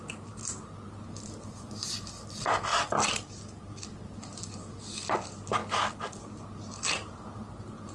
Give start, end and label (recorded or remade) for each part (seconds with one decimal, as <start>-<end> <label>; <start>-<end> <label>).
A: 0.0-7.9 recorded